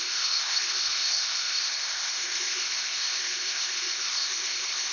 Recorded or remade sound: remade